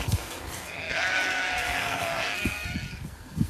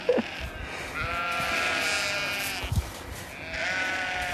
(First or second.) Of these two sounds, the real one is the second